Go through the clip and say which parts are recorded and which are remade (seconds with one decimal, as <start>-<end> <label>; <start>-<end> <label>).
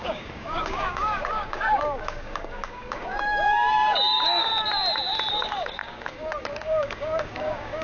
0.0-4.5 remade; 4.5-5.3 recorded; 5.3-7.8 remade